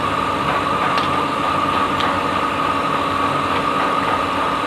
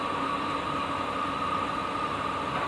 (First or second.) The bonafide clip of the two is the first